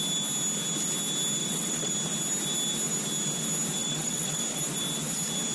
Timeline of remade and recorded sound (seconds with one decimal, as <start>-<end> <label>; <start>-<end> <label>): 0.0-1.4 recorded; 1.4-1.9 remade; 1.9-3.8 recorded; 3.8-4.4 remade; 4.4-5.5 recorded